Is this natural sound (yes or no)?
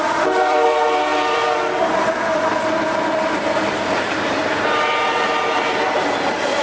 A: no